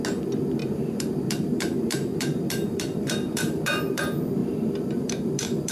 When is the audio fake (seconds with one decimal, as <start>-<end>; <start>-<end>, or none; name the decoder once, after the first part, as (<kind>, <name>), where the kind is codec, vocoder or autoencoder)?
0.6-4.0 (vocoder, BigVGAN v2); 4.4-5.7